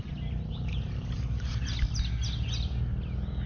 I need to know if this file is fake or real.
real